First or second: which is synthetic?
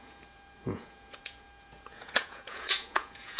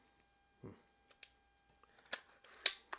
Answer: first